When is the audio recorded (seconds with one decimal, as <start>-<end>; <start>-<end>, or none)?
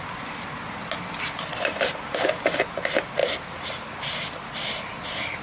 0.0-5.4